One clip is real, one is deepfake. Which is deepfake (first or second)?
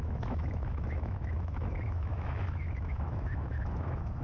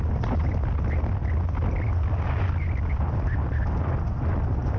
first